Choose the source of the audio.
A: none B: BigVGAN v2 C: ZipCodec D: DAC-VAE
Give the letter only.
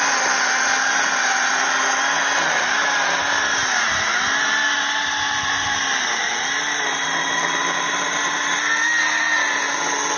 A